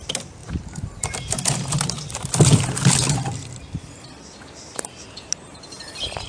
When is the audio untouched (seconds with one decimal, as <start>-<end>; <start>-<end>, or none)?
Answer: 0.0-6.3